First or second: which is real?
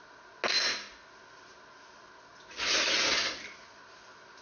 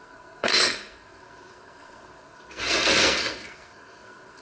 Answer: first